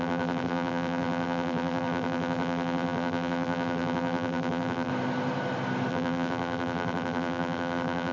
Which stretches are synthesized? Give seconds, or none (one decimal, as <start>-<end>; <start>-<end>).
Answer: 0.0-4.9; 5.9-8.1